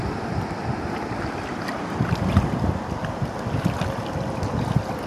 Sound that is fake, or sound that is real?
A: fake